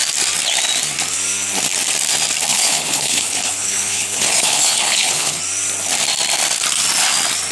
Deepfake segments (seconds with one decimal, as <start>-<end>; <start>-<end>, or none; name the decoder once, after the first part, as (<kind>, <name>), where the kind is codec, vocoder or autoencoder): 2.5-5.4 (codec, HILCodec)